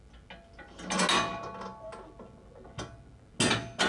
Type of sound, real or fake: real